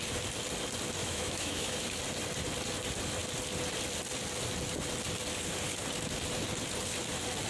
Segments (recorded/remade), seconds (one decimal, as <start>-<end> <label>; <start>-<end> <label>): 0.0-1.0 recorded; 1.0-2.0 remade; 2.0-7.5 recorded